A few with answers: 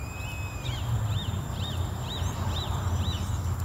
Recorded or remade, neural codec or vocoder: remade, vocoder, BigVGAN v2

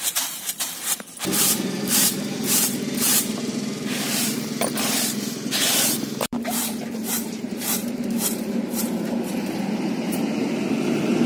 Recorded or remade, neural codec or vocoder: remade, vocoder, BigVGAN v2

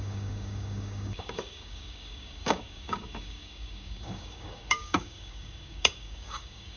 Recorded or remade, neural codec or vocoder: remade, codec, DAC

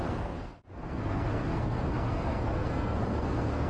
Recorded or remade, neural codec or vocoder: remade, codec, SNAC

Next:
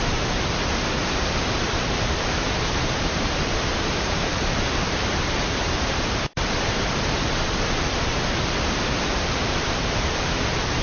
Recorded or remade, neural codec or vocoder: remade, vocoder, BigVGAN v2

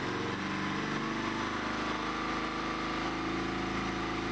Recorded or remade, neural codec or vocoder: recorded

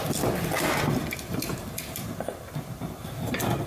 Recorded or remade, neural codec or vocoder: recorded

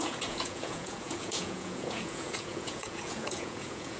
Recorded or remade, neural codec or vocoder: remade, vocoder, Vocos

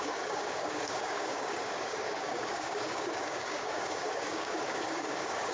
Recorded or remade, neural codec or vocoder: remade, codec, DAC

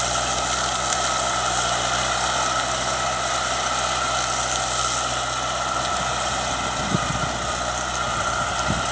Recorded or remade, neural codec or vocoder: recorded